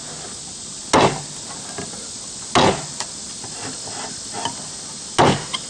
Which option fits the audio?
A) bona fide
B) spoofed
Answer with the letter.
A